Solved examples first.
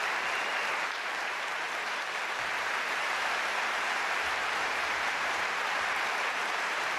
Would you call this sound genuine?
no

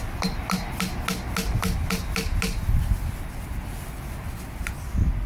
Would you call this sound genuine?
yes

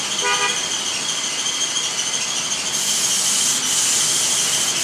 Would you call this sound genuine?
yes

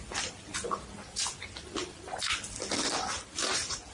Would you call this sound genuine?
yes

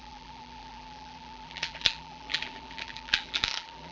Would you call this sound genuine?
no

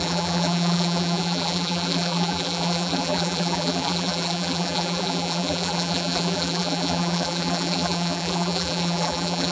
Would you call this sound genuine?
no